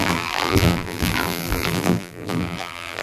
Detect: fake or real fake